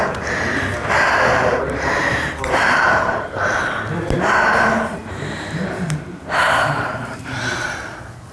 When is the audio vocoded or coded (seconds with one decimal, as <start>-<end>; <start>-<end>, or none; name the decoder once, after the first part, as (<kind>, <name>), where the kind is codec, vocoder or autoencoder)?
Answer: 1.3-3.6 (vocoder, BigVGAN v2); 5.0-7.4